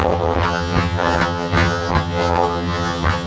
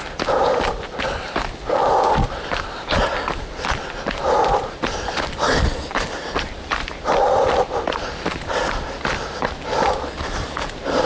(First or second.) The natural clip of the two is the second